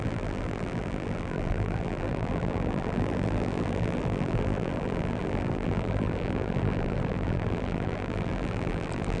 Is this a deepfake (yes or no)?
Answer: yes